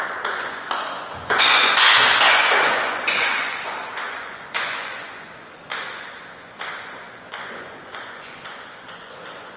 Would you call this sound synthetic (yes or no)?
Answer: yes